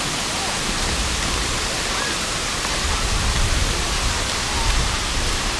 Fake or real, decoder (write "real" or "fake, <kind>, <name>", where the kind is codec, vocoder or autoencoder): real